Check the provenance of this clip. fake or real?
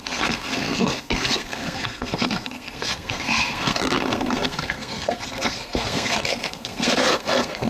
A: fake